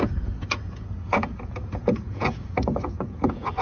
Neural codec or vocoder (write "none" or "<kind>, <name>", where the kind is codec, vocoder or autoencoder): vocoder, Vocos